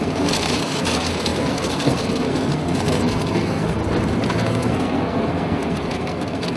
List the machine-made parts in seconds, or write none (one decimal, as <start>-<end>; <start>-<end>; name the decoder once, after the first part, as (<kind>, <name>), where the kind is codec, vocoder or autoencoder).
0.0-3.8 (codec, SNAC); 4.3-6.6